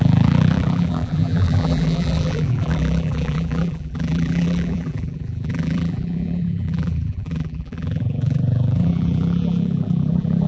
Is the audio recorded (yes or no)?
no